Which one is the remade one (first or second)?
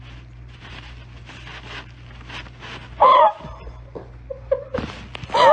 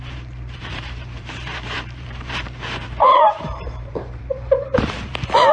second